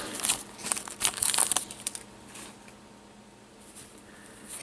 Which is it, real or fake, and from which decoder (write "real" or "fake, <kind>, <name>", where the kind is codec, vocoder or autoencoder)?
real